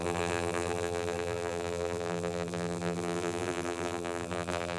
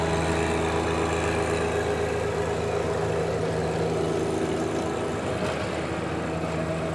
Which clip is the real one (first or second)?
second